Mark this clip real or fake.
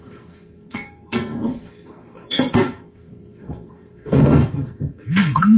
fake